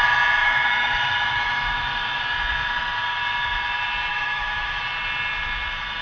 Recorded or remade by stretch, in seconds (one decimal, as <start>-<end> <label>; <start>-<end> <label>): 0.0-0.4 recorded; 0.4-2.2 remade; 2.2-4.1 recorded; 4.1-4.8 remade; 4.8-6.0 recorded